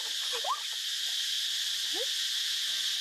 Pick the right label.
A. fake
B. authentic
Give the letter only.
B